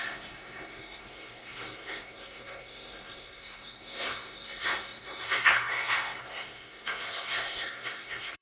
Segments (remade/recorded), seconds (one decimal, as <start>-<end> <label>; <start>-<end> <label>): 0.0-8.4 remade